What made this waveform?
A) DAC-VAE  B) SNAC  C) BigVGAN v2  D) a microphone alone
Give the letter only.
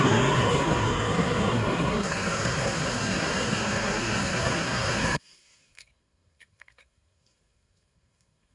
B